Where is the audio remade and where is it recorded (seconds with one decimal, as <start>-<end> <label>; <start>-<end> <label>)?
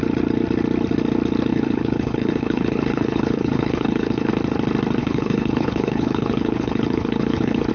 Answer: 0.0-1.5 recorded; 1.5-4.3 remade; 4.3-5.0 recorded; 5.0-7.7 remade